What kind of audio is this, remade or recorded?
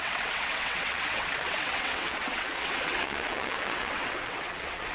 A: remade